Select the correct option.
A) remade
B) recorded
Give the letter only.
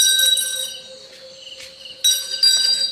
B